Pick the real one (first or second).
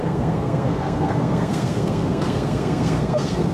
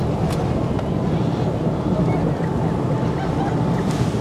second